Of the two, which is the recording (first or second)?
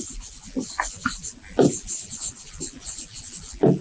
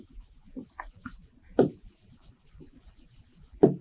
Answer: first